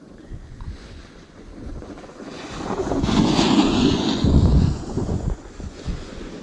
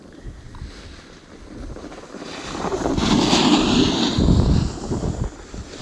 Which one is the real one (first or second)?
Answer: second